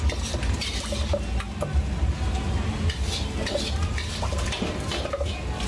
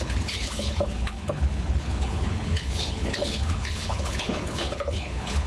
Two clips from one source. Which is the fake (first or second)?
second